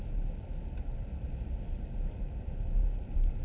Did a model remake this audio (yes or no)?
no